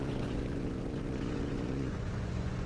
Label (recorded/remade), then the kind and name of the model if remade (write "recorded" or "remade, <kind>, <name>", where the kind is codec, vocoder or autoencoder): remade, vocoder, Vocos